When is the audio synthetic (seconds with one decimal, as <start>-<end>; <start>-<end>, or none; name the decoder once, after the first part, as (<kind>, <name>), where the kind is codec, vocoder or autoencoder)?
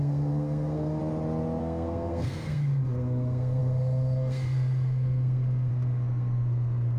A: 0.0-1.0 (codec, SNAC); 1.6-7.0